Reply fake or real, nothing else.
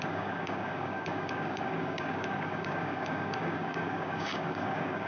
fake